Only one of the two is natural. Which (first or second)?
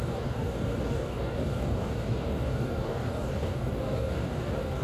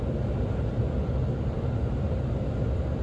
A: second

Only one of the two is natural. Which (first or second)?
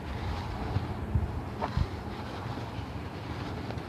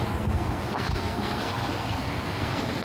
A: first